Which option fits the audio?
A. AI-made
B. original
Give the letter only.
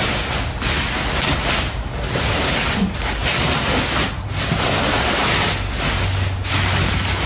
B